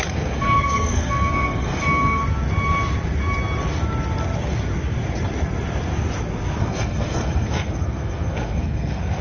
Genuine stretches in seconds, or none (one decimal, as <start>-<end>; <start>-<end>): 2.2-6.6